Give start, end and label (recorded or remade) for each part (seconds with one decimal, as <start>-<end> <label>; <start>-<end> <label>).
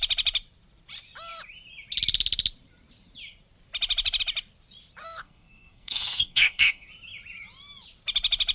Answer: 0.0-5.0 recorded; 5.0-6.9 remade; 6.9-8.5 recorded